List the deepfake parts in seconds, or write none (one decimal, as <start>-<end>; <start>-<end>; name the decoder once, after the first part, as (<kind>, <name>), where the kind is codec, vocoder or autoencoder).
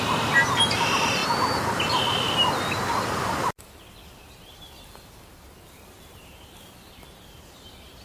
none